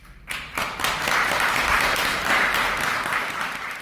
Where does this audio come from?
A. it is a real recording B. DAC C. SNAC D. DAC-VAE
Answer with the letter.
A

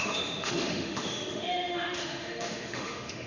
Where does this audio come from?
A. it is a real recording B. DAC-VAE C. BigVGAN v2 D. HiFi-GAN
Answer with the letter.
B